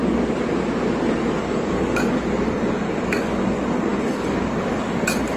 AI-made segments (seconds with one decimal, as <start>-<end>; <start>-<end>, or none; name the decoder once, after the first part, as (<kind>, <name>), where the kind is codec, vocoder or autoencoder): 1.4-5.4 (codec, DAC)